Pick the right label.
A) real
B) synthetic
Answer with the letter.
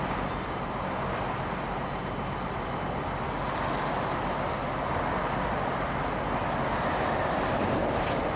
A